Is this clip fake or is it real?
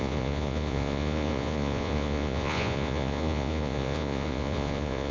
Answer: fake